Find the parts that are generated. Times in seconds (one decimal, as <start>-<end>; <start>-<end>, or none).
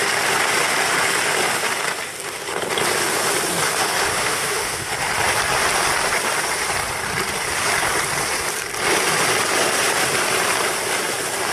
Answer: 4.2-4.9